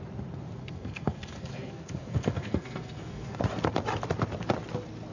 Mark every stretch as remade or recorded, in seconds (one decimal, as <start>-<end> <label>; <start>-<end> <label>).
0.0-0.6 recorded; 0.6-3.4 remade; 3.4-5.1 recorded